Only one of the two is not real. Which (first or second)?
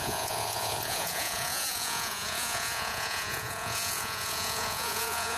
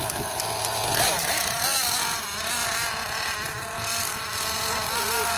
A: first